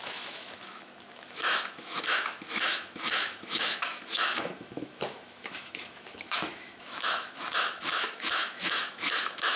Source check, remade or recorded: remade